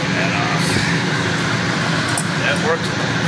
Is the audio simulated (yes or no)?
no